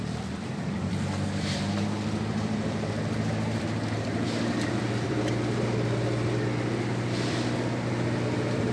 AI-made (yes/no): yes